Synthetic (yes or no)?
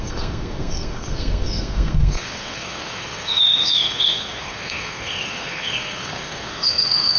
yes